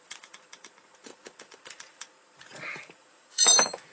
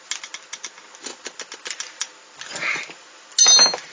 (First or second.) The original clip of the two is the second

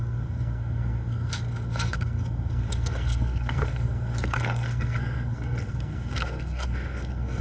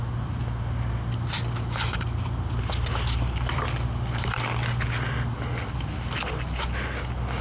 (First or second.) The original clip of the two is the second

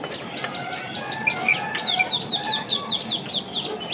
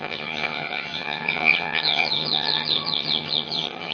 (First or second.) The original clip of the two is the first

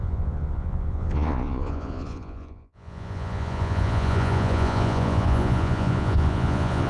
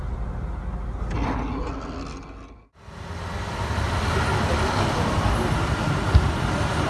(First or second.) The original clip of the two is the second